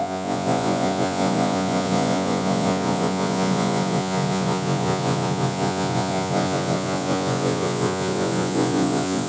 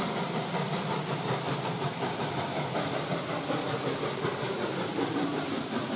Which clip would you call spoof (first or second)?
first